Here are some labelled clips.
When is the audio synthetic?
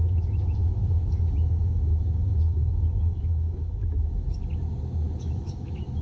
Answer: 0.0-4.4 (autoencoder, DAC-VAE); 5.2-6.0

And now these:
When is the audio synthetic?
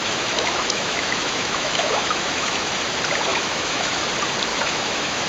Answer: 0.0-2.7 (autoencoder, DAC-VAE); 3.3-4.1; 4.5-5.3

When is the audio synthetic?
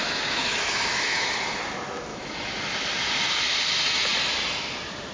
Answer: 0.0-1.6 (autoencoder, DAC-VAE); 2.1-2.6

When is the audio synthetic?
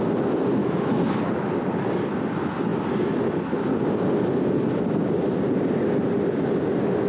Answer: 0.6-1.2 (autoencoder, DAC-VAE)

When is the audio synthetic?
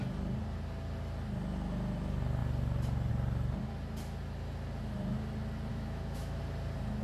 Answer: 5.7-6.4 (autoencoder, DAC-VAE)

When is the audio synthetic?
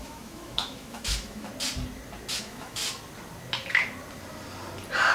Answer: 0.0-1.5 (autoencoder, DAC-VAE); 2.4-2.8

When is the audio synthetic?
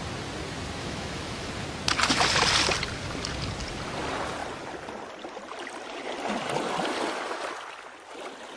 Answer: 0.8-1.5 (autoencoder, DAC-VAE)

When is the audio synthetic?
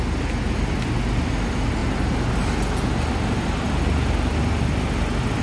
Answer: none